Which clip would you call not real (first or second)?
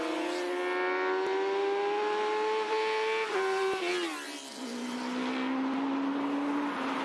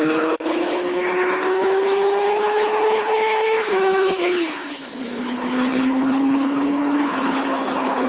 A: second